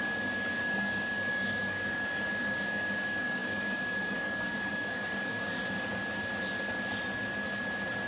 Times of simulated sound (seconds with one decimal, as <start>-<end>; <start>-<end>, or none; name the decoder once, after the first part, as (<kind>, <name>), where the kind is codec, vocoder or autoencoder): 0.0-5.6 (codec, DAC)

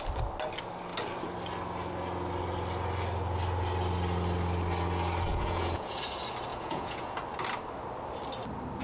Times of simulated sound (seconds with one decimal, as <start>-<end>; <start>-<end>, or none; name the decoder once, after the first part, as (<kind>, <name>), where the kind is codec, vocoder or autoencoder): 5.3-6.0 (vocoder, Vocos); 6.5-7.2

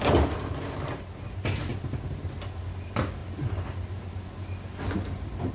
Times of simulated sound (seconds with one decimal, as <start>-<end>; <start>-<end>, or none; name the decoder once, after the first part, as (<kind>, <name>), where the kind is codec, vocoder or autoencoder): none

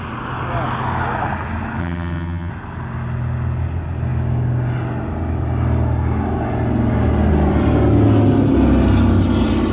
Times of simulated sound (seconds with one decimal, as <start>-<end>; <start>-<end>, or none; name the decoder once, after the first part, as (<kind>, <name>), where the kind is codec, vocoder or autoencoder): 1.8-2.5 (vocoder, HiFi-GAN)

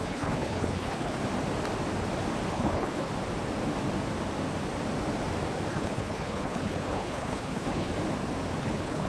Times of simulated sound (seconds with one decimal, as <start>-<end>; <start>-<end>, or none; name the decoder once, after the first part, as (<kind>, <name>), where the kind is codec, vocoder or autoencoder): 0.0-1.2 (codec, HILCodec); 2.5-3.1; 5.7-7.9; 8.6-9.1

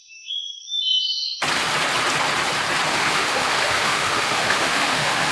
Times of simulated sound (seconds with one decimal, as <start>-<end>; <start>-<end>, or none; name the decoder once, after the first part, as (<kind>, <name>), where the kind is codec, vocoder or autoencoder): 0.0-0.6 (autoencoder, DAC-VAE); 2.9-5.3